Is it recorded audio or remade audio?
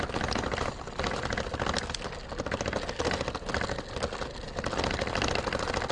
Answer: recorded